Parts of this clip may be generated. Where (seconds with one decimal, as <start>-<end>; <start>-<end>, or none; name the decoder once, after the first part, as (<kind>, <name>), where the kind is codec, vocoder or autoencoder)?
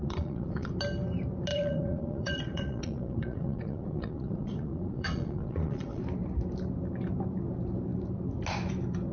0.0-0.7 (vocoder, Vocos); 1.5-6.0